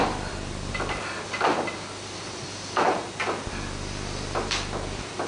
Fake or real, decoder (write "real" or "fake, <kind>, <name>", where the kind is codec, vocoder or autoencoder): real